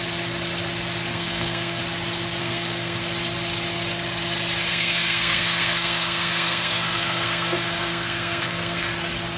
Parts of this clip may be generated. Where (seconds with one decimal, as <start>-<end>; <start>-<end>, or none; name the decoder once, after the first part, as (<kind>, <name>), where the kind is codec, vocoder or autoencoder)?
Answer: 1.1-1.8 (codec, SNAC); 2.4-3.0; 4.7-8.9